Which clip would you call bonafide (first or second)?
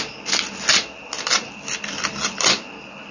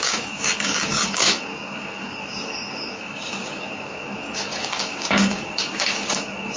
first